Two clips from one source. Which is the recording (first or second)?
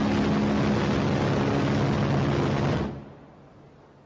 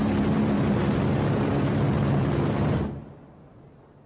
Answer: first